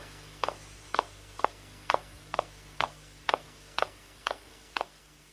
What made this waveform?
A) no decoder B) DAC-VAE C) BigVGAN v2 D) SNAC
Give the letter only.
D